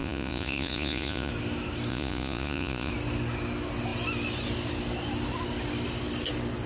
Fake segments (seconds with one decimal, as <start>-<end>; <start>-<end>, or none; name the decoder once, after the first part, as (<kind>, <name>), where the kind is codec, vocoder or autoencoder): 0.0-1.3 (vocoder, Vocos); 1.9-2.9